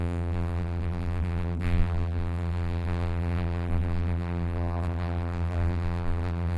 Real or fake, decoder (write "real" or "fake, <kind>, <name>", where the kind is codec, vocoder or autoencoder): fake, vocoder, BigVGAN v2